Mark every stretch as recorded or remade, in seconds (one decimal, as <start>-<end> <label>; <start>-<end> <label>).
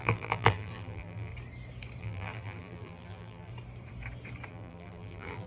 0.0-1.3 remade; 1.3-2.0 recorded; 2.0-3.5 remade; 3.5-4.5 recorded; 4.5-5.5 remade